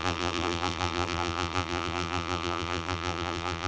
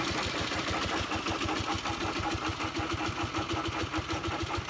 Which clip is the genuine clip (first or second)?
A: second